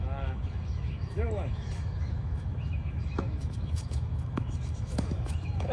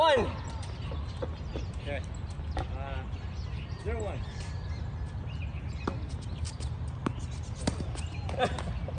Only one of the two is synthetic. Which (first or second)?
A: first